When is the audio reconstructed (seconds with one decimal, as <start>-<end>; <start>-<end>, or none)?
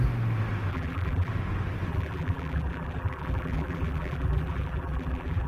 0.7-1.3; 1.9-5.5